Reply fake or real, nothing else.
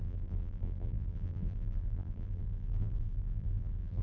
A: fake